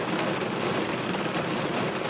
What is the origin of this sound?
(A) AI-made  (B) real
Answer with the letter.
B